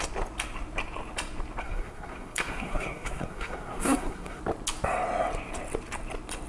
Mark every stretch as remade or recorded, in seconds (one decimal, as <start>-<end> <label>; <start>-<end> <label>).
0.0-1.6 recorded; 1.6-4.4 remade; 4.4-6.5 recorded